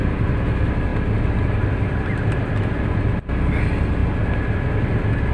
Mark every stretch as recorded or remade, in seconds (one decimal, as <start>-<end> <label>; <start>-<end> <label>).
0.0-5.3 recorded